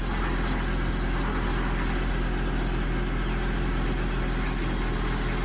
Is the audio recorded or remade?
recorded